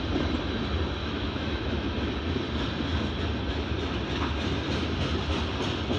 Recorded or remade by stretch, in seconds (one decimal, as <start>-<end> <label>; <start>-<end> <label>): 0.0-1.0 recorded; 1.0-2.1 remade; 2.1-6.0 recorded